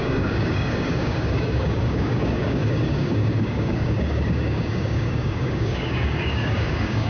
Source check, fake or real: fake